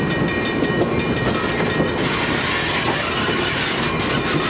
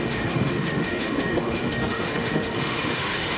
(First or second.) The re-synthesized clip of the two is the second